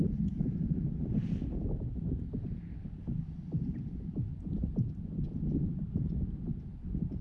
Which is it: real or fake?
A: fake